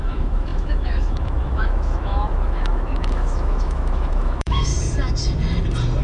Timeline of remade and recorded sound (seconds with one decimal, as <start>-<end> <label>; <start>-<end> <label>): 0.0-4.7 remade; 4.7-6.0 recorded

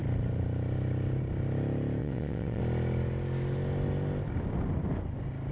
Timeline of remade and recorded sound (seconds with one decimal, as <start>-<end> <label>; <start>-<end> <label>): 0.0-2.0 recorded; 2.0-2.6 remade; 2.6-5.5 recorded

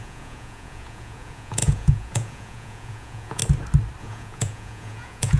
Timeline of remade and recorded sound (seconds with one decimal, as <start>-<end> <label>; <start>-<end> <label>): 0.0-3.4 remade; 3.4-4.0 recorded; 4.0-5.4 remade

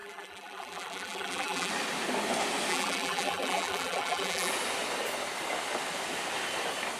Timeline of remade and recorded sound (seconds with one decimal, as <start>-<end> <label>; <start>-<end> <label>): 0.0-1.7 remade; 1.7-2.7 recorded; 2.7-4.5 remade; 4.5-7.0 recorded

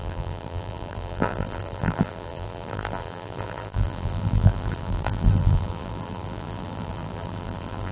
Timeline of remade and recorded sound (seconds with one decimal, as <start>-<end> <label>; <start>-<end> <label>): 0.0-7.9 remade

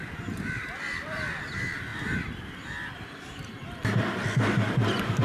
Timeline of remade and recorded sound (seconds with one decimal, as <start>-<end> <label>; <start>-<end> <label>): 0.0-1.9 remade; 1.9-5.2 recorded